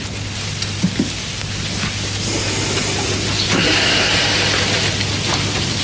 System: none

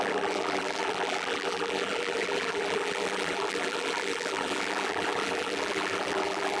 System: vocoder, BigVGAN v2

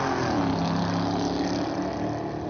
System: none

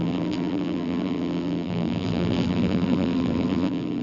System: vocoder, BigVGAN v2